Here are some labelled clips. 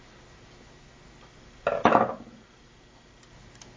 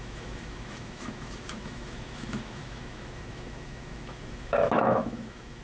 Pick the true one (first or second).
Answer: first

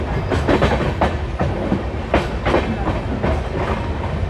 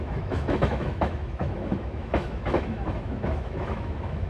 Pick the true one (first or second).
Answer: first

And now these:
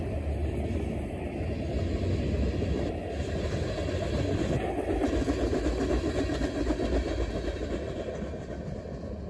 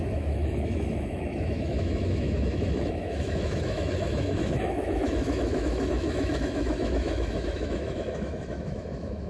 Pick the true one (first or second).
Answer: first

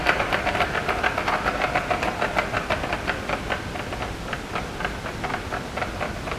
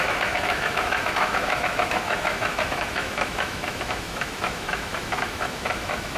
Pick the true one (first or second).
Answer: first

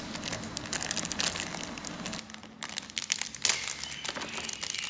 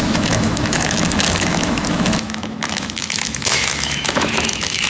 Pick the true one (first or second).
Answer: first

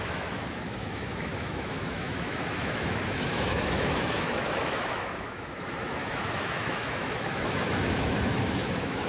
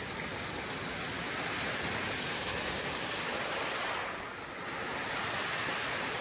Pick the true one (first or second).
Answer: second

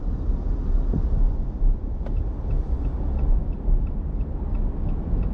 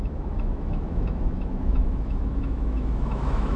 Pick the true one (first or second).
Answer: first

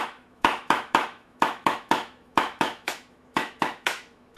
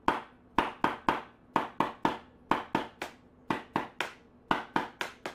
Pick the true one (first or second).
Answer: second